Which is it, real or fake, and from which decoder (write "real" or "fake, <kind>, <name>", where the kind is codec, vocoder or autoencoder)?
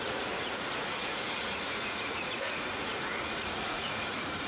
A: fake, vocoder, Vocos